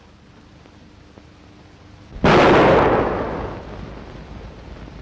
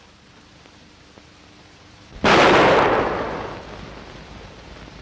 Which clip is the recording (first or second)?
first